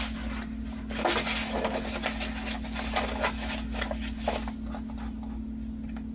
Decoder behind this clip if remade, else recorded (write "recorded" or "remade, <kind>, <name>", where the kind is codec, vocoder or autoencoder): recorded